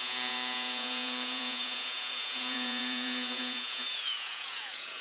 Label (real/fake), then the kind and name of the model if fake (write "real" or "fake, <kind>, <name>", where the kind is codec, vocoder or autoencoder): fake, vocoder, Vocos